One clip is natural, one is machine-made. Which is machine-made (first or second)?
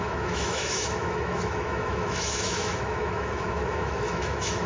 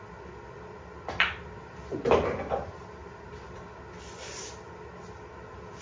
first